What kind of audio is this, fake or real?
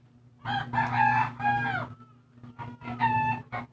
real